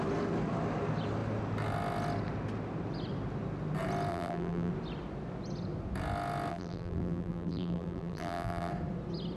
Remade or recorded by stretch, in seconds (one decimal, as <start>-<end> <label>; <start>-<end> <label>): 0.0-4.1 recorded; 4.1-4.7 remade; 4.7-6.5 recorded; 6.5-8.7 remade; 8.7-9.4 recorded